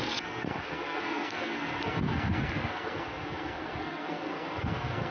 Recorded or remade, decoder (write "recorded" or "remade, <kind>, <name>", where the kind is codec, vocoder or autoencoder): remade, codec, SNAC